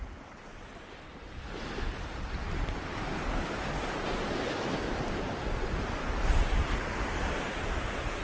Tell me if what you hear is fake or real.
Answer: real